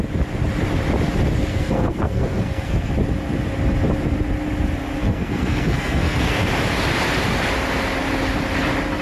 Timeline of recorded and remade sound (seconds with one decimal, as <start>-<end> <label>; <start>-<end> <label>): 0.0-1.5 recorded; 1.5-2.9 remade; 2.9-5.0 recorded; 5.0-6.5 remade; 6.5-9.0 recorded